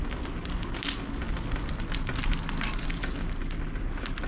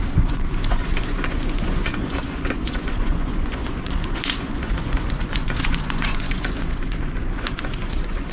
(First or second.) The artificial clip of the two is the second